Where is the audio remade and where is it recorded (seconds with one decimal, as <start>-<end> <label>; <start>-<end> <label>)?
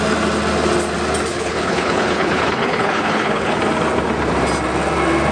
0.0-1.3 recorded; 1.3-3.6 remade; 3.6-5.3 recorded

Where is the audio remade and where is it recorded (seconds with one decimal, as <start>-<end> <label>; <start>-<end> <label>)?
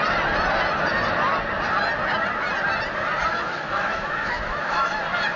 0.0-3.3 recorded; 3.3-5.0 remade; 5.0-5.4 recorded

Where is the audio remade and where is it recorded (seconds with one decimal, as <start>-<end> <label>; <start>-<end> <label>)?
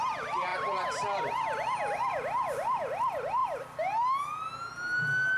0.0-5.4 recorded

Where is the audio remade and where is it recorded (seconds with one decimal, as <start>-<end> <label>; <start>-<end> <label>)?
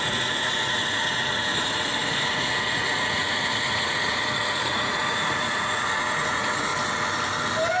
0.0-6.7 remade; 6.7-7.8 recorded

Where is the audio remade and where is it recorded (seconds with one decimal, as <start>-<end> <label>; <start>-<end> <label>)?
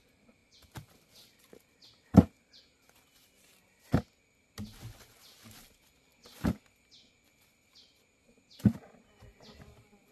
0.0-10.1 recorded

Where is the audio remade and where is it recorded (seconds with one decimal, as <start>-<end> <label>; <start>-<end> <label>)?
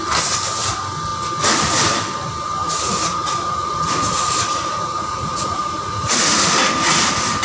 0.0-2.6 recorded; 2.6-6.5 remade; 6.5-7.4 recorded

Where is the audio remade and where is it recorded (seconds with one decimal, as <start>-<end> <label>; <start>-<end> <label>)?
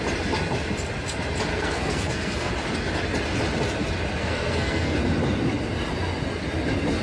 0.0-1.5 recorded; 1.5-2.5 remade; 2.5-4.2 recorded; 4.2-5.0 remade; 5.0-7.0 recorded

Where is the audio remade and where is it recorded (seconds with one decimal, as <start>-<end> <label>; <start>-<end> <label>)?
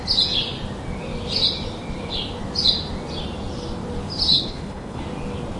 0.0-4.3 recorded; 4.3-5.0 remade; 5.0-5.6 recorded